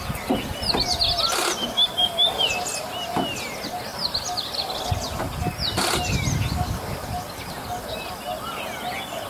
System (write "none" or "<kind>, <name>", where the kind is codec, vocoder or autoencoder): none